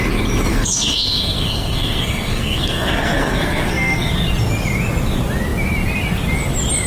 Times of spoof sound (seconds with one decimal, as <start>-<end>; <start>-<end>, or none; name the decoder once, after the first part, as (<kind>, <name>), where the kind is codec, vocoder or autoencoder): 0.5-4.1 (codec, SNAC)